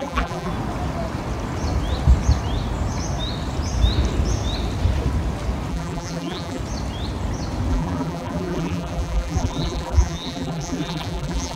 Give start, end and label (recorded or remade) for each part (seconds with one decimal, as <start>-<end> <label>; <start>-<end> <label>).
0.0-0.5 remade; 0.5-5.7 recorded; 5.7-6.6 remade; 6.6-7.7 recorded; 7.7-11.6 remade